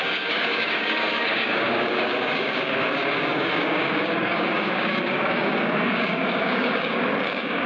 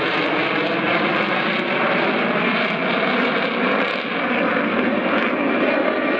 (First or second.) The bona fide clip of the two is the second